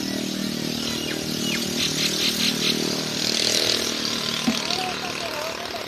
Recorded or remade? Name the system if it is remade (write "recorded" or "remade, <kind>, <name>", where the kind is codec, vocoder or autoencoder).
recorded